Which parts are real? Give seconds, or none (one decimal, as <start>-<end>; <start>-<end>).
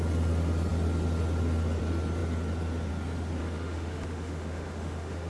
0.0-3.4